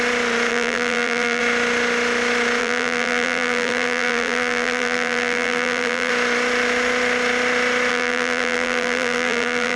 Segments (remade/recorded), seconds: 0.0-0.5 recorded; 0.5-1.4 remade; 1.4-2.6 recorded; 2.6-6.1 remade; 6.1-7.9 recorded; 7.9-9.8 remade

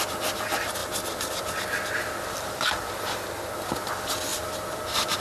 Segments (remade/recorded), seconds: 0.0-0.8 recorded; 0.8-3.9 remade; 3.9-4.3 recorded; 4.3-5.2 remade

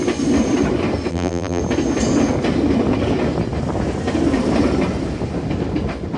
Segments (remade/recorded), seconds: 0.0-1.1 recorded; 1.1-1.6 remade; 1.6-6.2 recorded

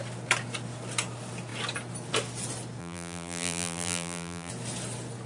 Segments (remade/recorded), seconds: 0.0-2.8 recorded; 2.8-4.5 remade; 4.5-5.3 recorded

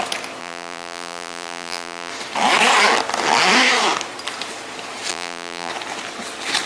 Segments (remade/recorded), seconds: 0.0-0.4 recorded; 0.4-2.1 remade; 2.1-5.1 recorded; 5.1-5.7 remade; 5.7-6.7 recorded